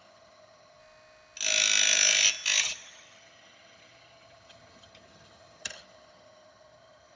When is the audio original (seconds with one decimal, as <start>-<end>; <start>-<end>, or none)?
0.8-2.6